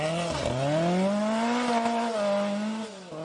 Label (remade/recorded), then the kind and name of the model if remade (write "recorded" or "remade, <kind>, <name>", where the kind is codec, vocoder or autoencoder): recorded